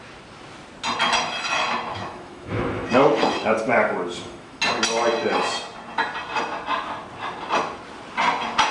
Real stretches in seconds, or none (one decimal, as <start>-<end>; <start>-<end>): 0.0-1.9; 4.6-8.7